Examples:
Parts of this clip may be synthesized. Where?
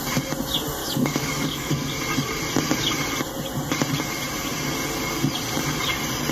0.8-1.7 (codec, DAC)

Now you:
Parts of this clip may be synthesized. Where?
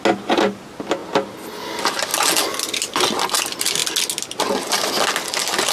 none